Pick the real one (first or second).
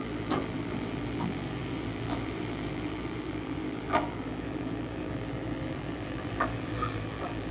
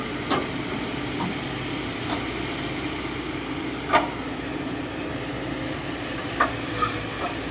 second